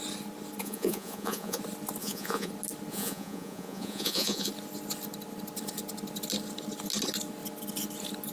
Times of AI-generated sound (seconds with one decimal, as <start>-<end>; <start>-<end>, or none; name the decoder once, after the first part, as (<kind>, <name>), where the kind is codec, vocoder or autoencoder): 0.6-1.6 (vocoder, Vocos); 2.0-2.5; 2.9-4.5